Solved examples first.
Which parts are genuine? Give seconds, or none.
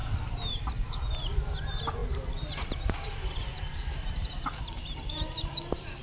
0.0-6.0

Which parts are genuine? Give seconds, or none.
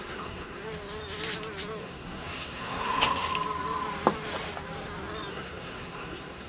0.6-1.8; 3.3-5.3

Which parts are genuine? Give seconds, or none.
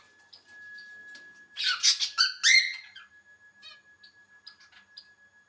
0.0-5.5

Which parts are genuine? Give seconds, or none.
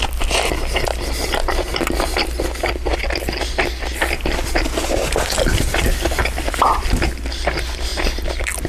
0.0-8.7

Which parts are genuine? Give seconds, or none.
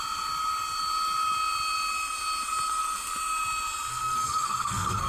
0.0-3.9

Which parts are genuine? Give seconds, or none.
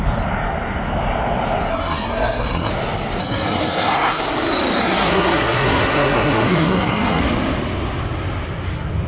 0.0-1.7; 2.7-3.2; 4.2-4.8; 7.2-9.1